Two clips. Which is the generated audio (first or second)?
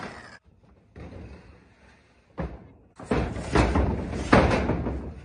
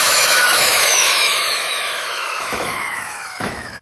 second